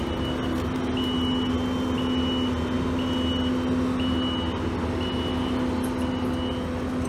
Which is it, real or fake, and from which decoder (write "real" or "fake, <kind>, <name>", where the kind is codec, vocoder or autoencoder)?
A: real